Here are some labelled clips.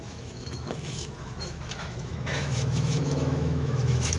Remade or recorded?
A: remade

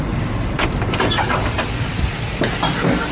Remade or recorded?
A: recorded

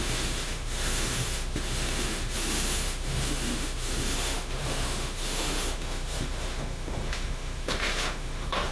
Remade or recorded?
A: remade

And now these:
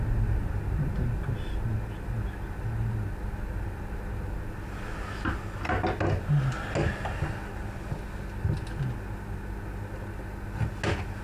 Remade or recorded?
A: recorded